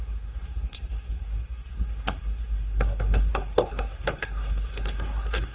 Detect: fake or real fake